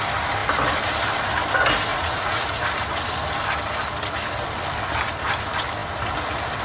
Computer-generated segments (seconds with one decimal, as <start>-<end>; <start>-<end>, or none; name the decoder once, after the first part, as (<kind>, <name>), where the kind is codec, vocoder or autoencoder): 1.9-2.6 (vocoder, Vocos)